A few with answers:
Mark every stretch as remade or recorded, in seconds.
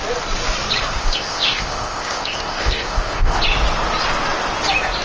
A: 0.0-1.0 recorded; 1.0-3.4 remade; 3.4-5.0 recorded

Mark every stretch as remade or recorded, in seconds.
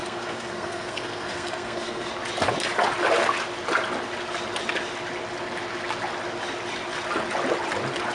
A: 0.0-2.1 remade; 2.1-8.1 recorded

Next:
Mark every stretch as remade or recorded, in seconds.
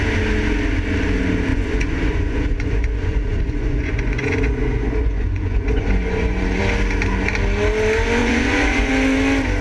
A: 0.0-1.5 recorded; 1.5-6.6 remade; 6.6-8.2 recorded; 8.2-8.9 remade; 8.9-9.6 recorded